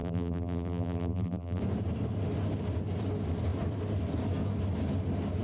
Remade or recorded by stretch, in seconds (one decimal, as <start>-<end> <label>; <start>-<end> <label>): 0.0-1.6 remade; 1.6-5.4 recorded